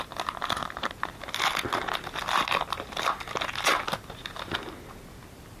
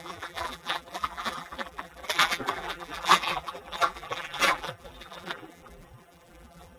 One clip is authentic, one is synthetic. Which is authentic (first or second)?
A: first